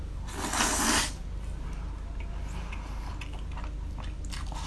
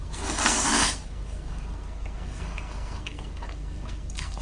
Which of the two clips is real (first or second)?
first